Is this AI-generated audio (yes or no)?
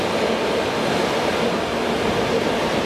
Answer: no